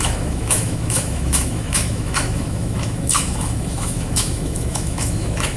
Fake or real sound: fake